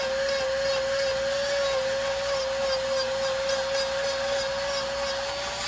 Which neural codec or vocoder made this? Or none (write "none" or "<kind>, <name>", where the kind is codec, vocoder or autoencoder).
none